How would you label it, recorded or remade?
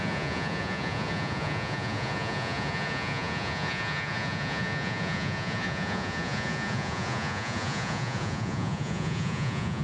remade